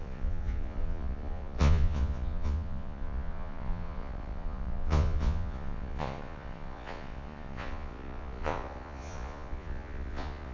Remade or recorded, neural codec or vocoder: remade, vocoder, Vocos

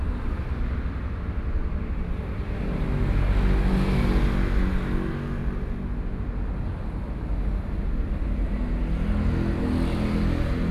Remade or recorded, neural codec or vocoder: recorded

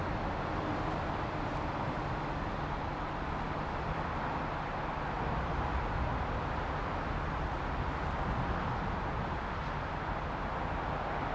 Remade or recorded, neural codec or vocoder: recorded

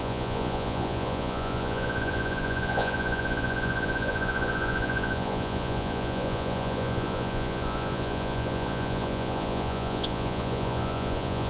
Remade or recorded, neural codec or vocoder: remade, vocoder, Vocos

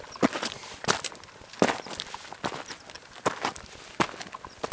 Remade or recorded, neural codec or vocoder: recorded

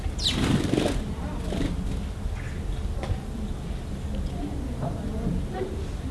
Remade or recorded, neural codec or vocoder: recorded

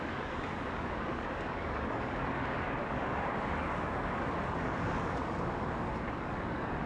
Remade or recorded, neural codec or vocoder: remade, codec, DAC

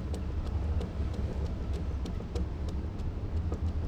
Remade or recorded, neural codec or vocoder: recorded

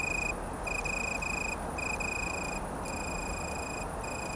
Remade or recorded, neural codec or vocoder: recorded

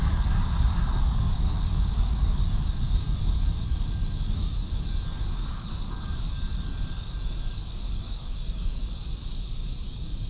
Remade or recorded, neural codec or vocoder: remade, codec, DAC